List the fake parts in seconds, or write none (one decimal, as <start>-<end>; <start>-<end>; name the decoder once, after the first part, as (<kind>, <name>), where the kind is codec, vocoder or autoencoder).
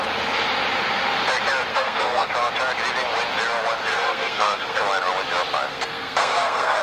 1.7-2.3 (codec, SNAC); 3.9-4.8; 5.7-6.8